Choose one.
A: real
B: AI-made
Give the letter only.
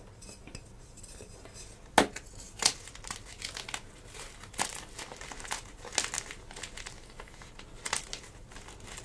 A